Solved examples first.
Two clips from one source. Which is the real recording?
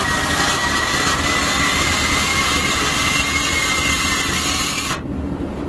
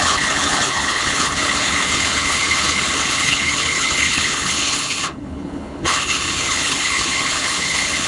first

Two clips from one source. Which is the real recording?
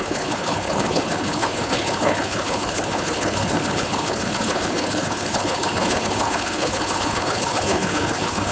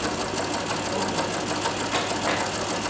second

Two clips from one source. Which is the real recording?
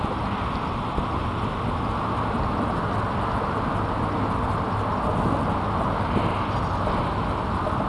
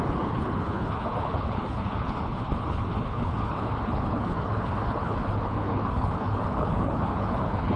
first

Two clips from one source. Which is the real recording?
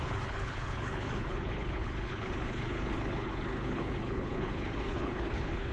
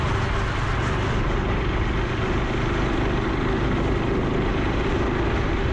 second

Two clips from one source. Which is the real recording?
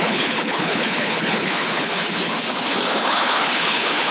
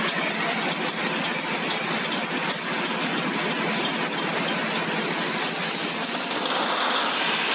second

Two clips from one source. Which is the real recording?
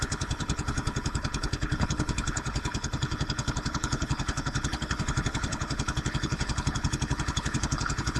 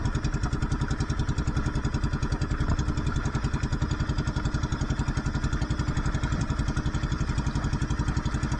second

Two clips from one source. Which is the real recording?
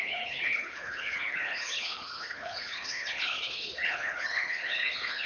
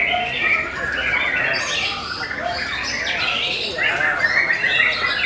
second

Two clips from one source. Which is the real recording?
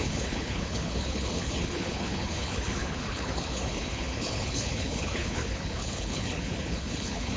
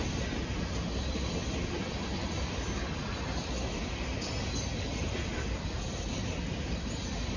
second